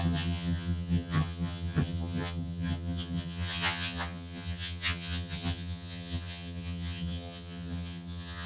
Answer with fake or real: fake